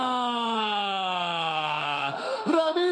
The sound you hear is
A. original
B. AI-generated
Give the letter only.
B